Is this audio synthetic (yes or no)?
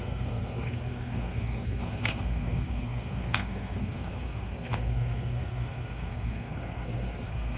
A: yes